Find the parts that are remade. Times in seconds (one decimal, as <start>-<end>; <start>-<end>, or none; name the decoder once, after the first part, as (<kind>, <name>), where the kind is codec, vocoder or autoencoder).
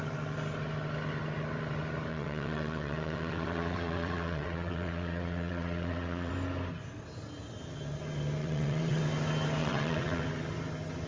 2.1-6.3 (vocoder, WaveNeXt); 8.4-9.0; 9.6-10.2